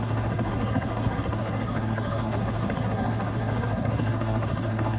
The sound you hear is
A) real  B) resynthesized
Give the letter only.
B